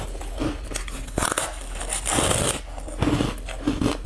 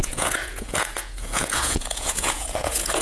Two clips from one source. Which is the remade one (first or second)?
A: second